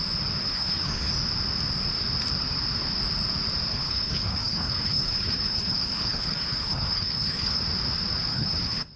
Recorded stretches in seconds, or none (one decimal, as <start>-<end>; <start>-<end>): 0.0-0.4; 1.1-3.7; 7.6-8.3